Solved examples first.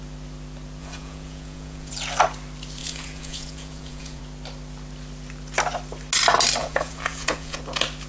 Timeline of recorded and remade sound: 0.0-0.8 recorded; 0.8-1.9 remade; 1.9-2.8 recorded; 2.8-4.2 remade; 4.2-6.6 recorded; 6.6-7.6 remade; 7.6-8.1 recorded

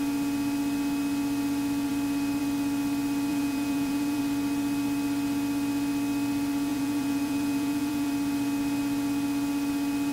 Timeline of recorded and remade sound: 0.0-3.3 recorded; 3.3-4.2 remade; 4.2-6.7 recorded; 6.7-8.1 remade; 8.1-10.1 recorded

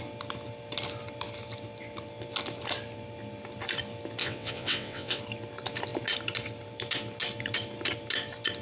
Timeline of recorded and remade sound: 0.0-4.2 recorded; 4.2-5.2 remade; 5.2-8.6 recorded

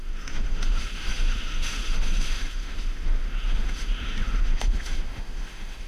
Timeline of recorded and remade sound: 0.0-5.9 remade

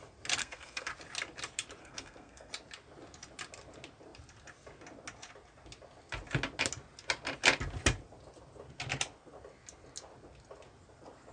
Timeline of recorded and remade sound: 0.0-0.4 recorded; 0.4-0.9 remade; 0.9-1.8 recorded; 1.8-2.5 remade; 2.5-11.3 recorded